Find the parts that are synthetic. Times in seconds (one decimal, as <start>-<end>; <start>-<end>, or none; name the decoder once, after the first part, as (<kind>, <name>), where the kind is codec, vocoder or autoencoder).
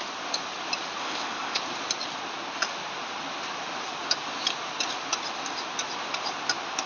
1.0-1.6 (codec, ZipCodec)